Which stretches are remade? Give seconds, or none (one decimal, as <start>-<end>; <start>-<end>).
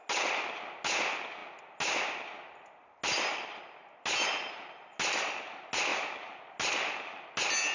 none